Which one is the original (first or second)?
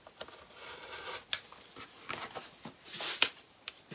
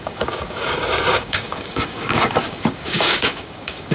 first